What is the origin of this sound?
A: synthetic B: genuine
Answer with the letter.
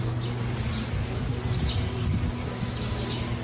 B